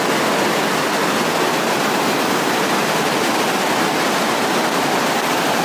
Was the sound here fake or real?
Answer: real